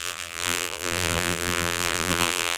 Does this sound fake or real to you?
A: fake